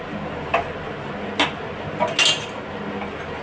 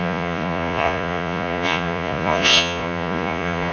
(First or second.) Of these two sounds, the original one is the first